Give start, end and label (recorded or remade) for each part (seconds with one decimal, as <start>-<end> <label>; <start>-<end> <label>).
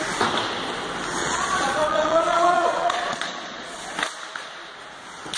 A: 0.0-1.2 recorded; 1.2-3.8 remade; 3.8-5.4 recorded